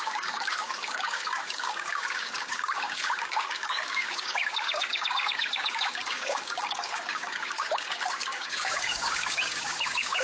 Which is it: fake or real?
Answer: fake